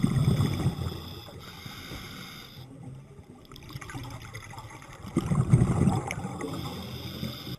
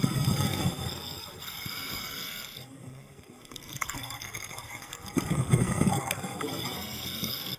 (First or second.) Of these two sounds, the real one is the first